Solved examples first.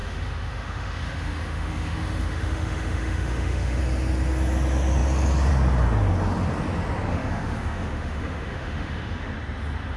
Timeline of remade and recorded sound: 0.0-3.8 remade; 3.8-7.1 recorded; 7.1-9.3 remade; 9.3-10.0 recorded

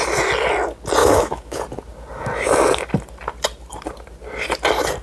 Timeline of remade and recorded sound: 0.0-1.0 recorded; 1.0-1.6 remade; 1.6-5.0 recorded

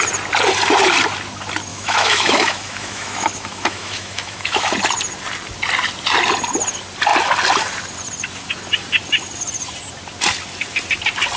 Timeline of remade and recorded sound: 0.0-1.7 recorded; 1.7-4.7 remade; 4.7-11.4 recorded

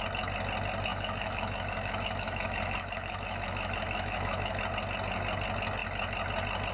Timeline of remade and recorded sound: 0.0-0.9 recorded; 0.9-4.6 remade; 4.6-6.7 recorded

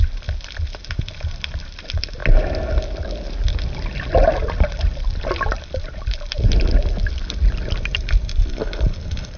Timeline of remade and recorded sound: 0.0-9.4 recorded